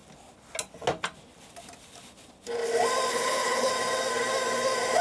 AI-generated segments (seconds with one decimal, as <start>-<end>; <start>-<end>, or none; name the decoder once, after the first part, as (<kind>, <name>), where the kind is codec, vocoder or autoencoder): 3.1-3.7 (codec, HILCodec)